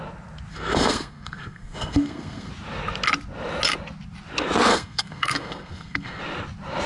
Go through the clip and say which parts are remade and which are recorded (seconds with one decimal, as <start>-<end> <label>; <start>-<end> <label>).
0.0-0.5 recorded; 0.5-2.5 remade; 2.5-4.7 recorded; 4.7-6.2 remade; 6.2-6.9 recorded